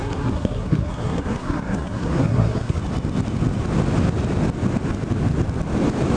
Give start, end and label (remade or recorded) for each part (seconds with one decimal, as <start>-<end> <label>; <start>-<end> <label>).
0.0-2.8 remade; 2.8-6.2 recorded